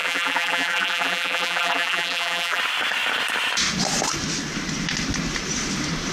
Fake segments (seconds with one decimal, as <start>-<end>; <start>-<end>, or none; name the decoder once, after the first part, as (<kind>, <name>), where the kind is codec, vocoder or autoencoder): 0.0-2.6 (vocoder, BigVGAN v2)